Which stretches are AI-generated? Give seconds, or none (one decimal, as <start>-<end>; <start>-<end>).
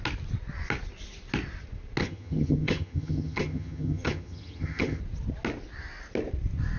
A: 2.0-5.0